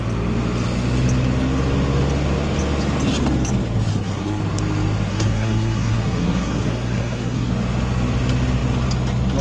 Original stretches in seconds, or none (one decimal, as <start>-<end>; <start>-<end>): 0.0-3.9; 4.4-5.1; 7.5-9.4